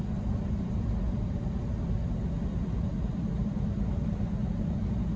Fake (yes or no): no